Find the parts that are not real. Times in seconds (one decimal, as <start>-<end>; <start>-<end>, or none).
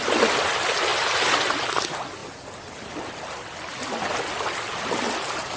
none